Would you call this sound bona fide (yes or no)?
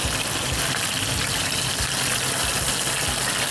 yes